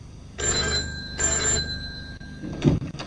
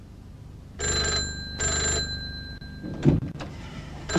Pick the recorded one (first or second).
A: second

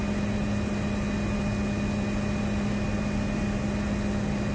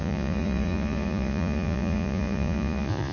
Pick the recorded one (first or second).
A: first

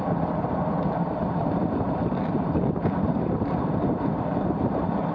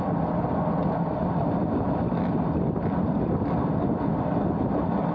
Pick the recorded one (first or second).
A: second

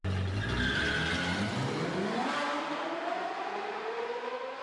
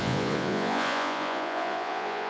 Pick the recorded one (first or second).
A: first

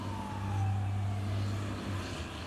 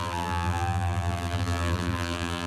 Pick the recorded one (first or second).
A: first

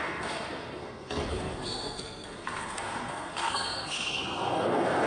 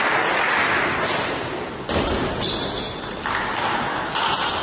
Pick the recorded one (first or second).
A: second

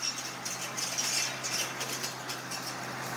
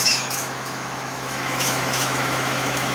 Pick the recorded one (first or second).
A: first